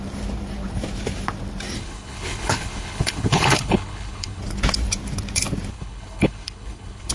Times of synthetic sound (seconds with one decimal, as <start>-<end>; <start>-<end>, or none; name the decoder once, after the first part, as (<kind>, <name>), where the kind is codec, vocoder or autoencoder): 1.8-4.4 (codec, HILCodec); 5.7-7.1